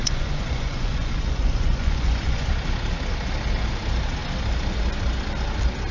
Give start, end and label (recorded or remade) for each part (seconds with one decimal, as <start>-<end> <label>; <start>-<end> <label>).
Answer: 0.0-2.5 remade; 2.5-5.9 recorded